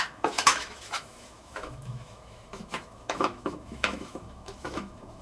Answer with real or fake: fake